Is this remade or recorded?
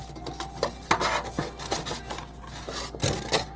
recorded